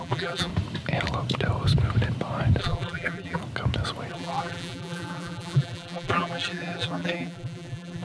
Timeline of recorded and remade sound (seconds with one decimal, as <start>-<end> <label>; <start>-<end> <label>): 0.0-0.5 remade; 0.5-2.6 recorded; 2.6-3.4 remade; 3.4-4.1 recorded; 4.1-8.0 remade